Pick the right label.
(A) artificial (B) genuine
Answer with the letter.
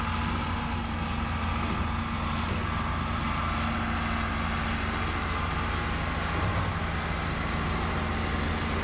B